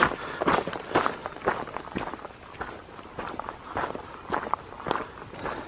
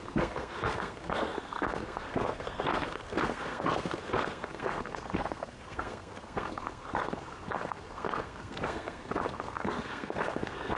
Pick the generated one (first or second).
second